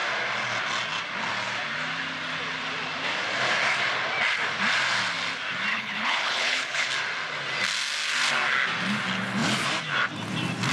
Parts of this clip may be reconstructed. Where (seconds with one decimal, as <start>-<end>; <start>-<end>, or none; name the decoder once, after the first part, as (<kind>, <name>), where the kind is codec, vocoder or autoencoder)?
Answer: 5.7-6.9 (codec, HILCodec)